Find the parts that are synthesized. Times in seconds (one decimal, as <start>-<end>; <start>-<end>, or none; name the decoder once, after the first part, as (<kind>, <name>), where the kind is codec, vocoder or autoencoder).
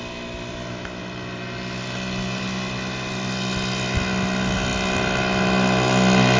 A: none